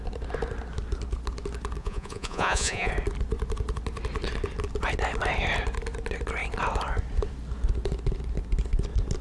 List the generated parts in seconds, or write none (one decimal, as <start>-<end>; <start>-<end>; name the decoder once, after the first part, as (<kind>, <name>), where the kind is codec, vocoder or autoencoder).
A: 1.8-2.9 (vocoder, Vocos)